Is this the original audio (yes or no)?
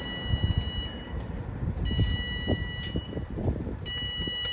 yes